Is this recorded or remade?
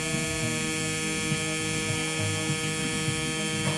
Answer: recorded